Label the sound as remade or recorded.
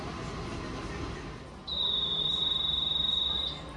recorded